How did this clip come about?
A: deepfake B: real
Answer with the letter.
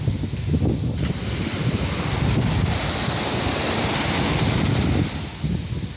B